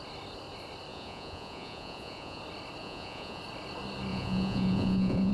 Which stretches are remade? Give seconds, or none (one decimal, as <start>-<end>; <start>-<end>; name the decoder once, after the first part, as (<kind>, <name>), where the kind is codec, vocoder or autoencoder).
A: 0.9-2.4 (vocoder, Vocos); 2.8-3.4; 4.1-5.3

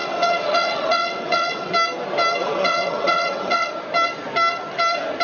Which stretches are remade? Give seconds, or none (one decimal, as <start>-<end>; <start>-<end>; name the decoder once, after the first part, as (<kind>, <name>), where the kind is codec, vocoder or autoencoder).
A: 0.0-1.7 (vocoder, WaveNeXt); 2.4-3.7